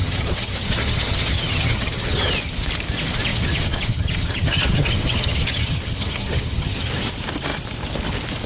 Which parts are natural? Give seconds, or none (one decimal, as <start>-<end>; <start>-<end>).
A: 2.3-3.3; 6.9-8.5